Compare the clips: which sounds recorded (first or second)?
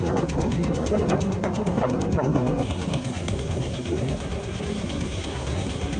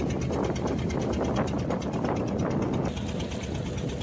second